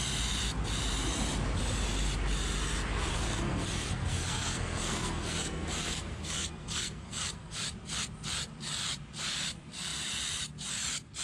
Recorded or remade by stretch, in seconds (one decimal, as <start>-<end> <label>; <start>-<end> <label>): 0.0-3.1 recorded; 3.1-7.6 remade; 7.6-11.2 recorded

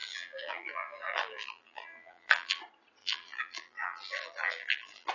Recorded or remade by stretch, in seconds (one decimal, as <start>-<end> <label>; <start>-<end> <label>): 0.0-2.6 remade; 2.6-3.0 recorded; 3.0-5.1 remade